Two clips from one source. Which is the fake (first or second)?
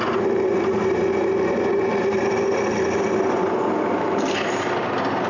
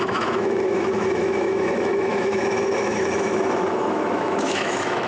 second